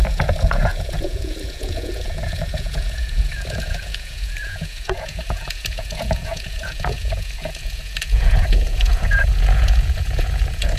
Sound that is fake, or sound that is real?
fake